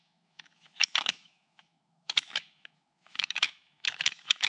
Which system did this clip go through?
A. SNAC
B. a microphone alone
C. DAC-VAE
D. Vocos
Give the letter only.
C